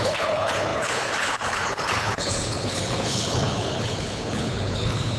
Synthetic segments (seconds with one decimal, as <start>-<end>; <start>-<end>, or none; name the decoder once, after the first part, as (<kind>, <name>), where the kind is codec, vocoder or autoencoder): 0.0-5.2 (codec, HILCodec)